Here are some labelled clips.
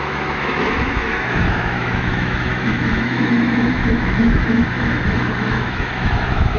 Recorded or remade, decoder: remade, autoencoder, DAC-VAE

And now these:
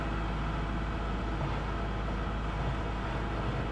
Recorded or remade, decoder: recorded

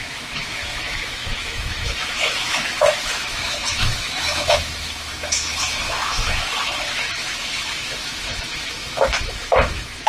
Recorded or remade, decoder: remade, autoencoder, DAC-VAE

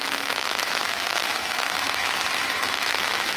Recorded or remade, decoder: remade, autoencoder, DAC-VAE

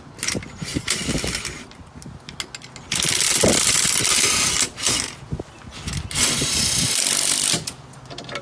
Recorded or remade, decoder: recorded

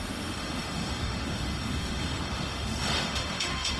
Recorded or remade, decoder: remade, autoencoder, DAC-VAE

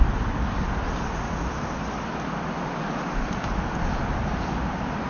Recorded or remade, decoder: recorded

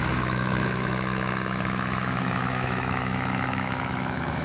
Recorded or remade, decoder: remade, autoencoder, DAC-VAE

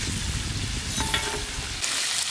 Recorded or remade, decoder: recorded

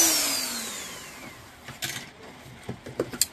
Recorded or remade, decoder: recorded